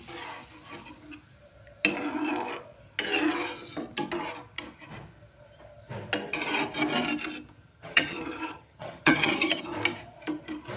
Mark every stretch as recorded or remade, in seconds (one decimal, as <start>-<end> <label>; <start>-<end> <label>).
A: 0.0-7.7 recorded; 7.7-9.6 remade; 9.6-10.8 recorded